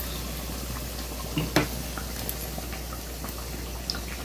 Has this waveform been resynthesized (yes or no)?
no